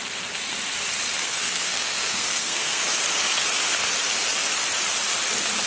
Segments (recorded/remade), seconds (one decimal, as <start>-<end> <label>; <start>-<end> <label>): 0.0-1.2 recorded; 1.2-2.8 remade; 2.8-5.7 recorded